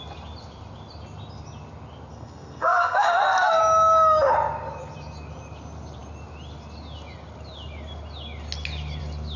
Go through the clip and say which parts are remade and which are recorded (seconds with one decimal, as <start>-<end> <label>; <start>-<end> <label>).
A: 0.0-2.1 recorded; 2.1-3.6 remade; 3.6-9.4 recorded